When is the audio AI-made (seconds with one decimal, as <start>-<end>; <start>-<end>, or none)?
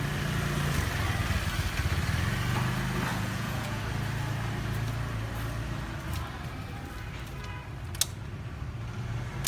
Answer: 3.1-3.8